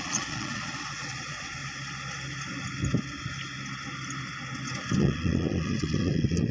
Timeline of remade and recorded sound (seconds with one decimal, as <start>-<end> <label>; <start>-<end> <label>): 0.0-1.6 remade; 1.6-5.0 recorded; 5.0-6.5 remade